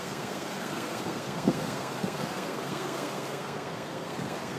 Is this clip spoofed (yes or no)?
yes